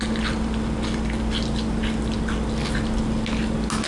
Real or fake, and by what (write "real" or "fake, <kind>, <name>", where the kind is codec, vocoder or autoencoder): real